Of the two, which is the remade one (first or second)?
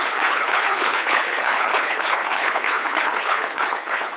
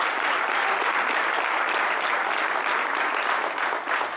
first